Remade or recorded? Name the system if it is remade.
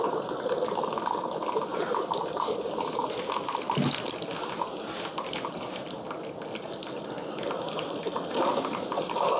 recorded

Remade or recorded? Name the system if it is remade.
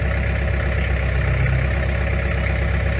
recorded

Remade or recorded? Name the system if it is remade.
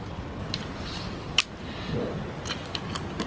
recorded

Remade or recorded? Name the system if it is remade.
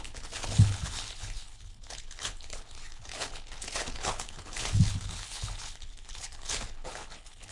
remade, codec, HILCodec